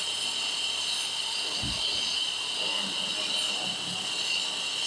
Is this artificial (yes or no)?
no